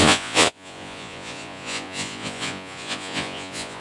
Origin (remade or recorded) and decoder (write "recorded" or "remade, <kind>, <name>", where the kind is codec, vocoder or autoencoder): remade, vocoder, Vocos